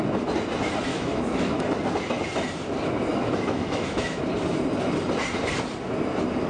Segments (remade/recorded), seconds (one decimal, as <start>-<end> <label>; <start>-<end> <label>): 0.0-0.9 recorded; 0.9-1.6 remade; 1.6-3.1 recorded; 3.1-4.2 remade; 4.2-6.5 recorded